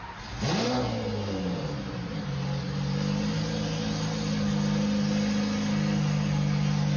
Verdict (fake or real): real